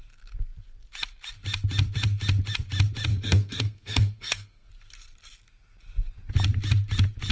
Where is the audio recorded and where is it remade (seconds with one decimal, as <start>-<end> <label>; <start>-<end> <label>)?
0.0-3.1 recorded; 3.1-4.7 remade; 4.7-7.3 recorded